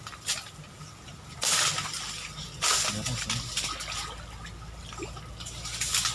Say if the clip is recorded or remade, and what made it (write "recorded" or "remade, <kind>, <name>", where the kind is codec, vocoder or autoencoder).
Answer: recorded